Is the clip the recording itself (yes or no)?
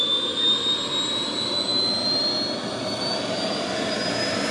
yes